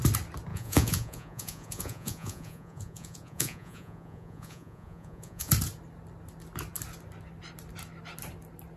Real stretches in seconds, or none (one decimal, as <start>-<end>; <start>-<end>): 0.0-0.5; 5.5-8.8